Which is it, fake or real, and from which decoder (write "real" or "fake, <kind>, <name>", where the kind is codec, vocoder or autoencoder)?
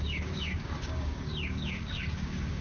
fake, codec, DAC